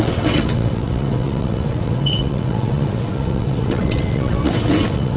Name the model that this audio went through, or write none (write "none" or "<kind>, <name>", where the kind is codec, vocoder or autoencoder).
vocoder, WaveNeXt